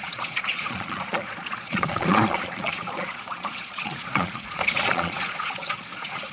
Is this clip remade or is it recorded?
remade